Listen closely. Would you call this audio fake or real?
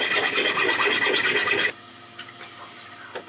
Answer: real